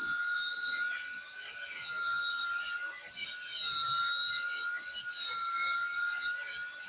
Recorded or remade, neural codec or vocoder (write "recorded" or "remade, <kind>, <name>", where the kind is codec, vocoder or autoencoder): recorded